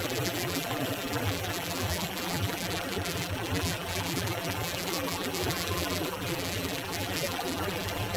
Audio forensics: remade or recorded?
remade